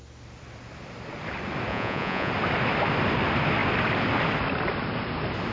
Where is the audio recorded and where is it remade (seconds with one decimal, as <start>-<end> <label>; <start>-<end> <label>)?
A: 0.0-1.7 recorded; 1.7-2.3 remade; 2.3-5.5 recorded